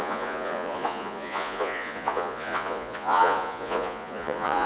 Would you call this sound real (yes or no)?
no